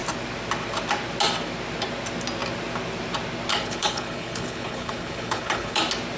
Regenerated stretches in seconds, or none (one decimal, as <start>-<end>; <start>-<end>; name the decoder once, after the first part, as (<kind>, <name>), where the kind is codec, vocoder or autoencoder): 3.5-5.8 (codec, HILCodec)